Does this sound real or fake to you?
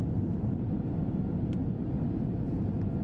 real